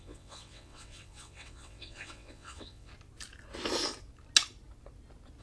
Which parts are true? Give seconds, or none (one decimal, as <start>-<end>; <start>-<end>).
2.9-5.4